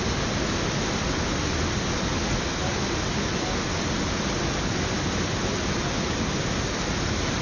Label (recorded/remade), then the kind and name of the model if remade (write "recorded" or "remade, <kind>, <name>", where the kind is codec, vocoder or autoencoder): recorded